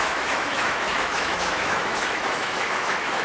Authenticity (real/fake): fake